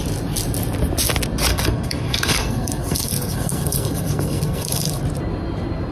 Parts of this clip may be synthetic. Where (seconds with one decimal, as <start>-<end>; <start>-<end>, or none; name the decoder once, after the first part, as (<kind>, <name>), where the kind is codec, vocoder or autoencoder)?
1.5-5.0 (codec, SNAC)